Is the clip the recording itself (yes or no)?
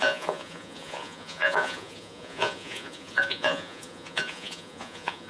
no